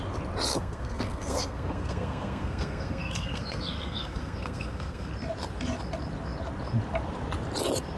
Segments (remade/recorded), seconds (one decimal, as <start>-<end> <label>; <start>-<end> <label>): 0.0-0.5 recorded; 0.5-5.1 remade; 5.1-8.0 recorded